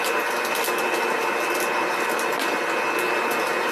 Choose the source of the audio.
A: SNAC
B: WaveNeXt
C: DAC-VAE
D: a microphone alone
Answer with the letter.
D